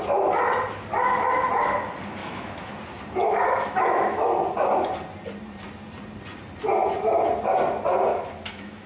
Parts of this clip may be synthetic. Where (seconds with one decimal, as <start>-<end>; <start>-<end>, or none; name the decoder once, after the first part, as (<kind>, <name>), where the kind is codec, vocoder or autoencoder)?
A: 2.2-2.7 (autoencoder, DAC-VAE); 3.2-4.3; 8.1-8.9